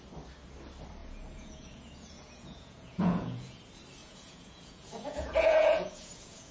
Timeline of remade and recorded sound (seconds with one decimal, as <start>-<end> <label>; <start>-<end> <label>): 0.0-1.0 recorded; 1.0-3.6 remade; 3.6-4.0 recorded; 4.0-6.5 remade